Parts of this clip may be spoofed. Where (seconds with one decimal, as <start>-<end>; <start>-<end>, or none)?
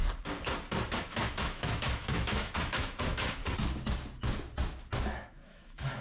1.0-3.4; 5.2-6.0